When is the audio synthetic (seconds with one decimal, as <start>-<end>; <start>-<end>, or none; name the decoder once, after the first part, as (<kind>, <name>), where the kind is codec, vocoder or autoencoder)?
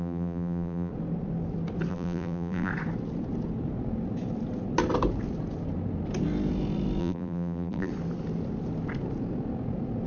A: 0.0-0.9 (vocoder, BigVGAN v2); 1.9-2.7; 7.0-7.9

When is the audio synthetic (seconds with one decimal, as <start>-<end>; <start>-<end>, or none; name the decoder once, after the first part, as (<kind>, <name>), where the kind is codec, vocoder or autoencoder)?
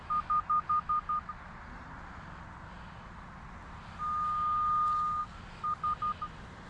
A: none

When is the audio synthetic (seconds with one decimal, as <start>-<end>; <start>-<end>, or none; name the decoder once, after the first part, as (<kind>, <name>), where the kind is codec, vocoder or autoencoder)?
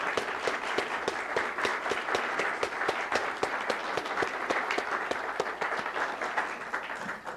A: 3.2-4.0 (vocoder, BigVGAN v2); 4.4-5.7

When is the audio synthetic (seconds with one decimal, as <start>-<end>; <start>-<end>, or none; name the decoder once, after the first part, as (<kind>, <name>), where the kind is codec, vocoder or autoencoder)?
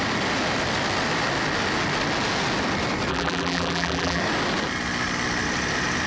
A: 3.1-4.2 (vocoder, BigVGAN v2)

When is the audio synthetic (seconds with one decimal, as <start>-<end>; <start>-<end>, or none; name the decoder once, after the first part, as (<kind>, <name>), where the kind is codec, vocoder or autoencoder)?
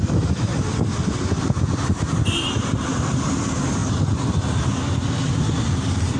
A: 0.0-0.5 (vocoder, BigVGAN v2); 1.4-3.8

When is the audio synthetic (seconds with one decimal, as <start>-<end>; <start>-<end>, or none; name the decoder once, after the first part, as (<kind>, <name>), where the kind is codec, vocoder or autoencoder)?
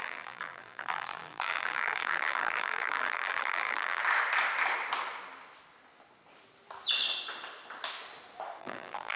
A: 0.0-4.0 (vocoder, BigVGAN v2); 8.6-9.2